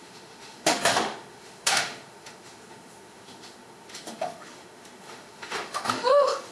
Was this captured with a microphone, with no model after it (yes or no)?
no